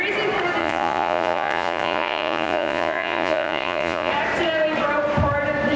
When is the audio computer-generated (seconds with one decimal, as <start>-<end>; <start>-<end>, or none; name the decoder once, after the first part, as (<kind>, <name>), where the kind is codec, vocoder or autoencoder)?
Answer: 0.6-4.1 (vocoder, Vocos)